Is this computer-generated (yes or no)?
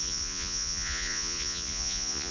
yes